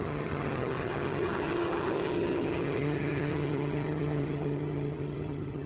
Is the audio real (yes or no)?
no